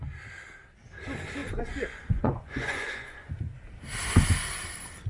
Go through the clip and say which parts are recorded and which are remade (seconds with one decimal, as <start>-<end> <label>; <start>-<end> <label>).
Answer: 0.0-1.4 recorded; 1.4-3.3 remade; 3.3-5.1 recorded